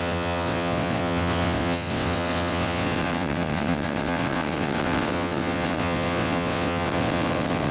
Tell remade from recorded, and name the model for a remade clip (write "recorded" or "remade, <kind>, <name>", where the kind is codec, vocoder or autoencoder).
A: remade, vocoder, WaveNeXt